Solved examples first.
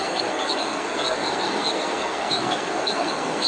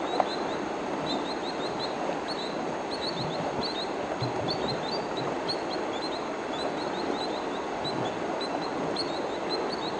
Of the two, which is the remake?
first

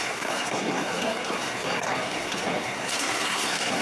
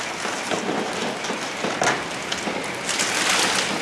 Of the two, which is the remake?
first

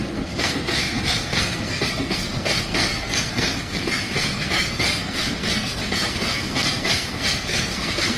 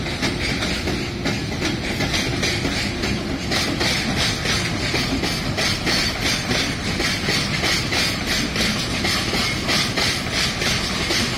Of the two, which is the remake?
first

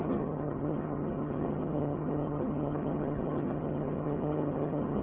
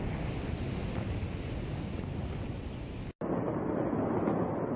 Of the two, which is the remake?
first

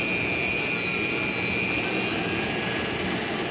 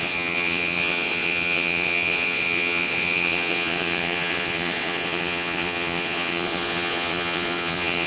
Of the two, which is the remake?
second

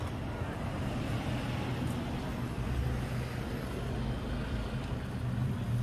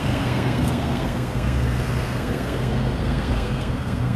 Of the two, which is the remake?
second